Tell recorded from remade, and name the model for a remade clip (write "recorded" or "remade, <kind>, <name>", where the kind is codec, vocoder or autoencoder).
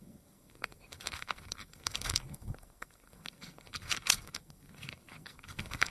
remade, codec, SNAC